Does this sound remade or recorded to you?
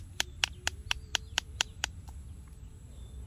recorded